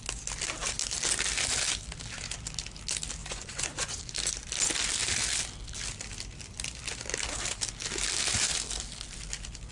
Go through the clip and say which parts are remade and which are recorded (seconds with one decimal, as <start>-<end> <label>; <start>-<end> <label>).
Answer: 0.0-3.2 recorded; 3.2-4.0 remade; 4.0-9.7 recorded